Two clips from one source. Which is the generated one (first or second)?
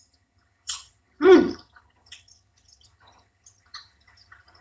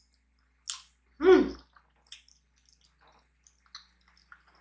first